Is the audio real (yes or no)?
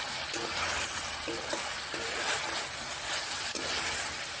yes